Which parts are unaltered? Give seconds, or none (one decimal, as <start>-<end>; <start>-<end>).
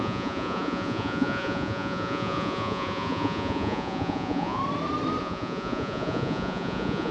4.6-5.2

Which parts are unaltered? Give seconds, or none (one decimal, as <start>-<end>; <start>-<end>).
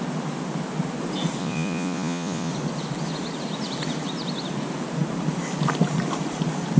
0.0-1.4; 2.5-6.8